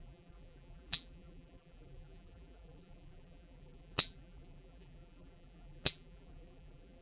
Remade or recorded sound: remade